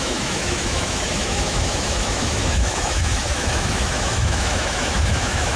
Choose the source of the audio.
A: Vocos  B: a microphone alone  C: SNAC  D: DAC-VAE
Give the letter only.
D